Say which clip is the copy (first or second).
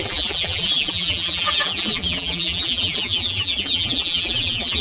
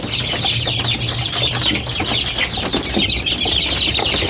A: first